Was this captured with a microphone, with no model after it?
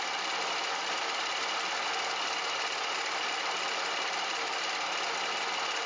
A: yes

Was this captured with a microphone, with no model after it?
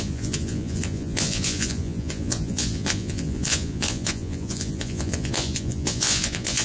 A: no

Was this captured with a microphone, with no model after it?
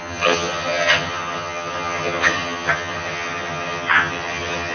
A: no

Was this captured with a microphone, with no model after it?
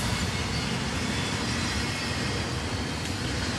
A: yes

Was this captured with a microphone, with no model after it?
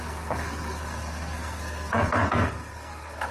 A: no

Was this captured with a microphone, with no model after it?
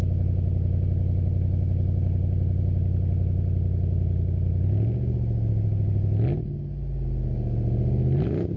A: yes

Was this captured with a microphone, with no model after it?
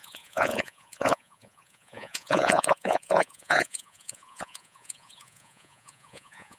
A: no